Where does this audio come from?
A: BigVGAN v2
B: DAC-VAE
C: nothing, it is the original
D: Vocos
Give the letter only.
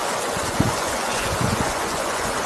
D